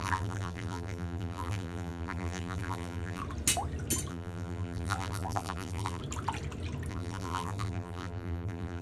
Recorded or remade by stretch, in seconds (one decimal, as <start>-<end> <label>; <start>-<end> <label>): 0.0-3.2 remade; 3.2-4.1 recorded; 4.1-6.0 remade; 6.0-6.9 recorded; 6.9-8.8 remade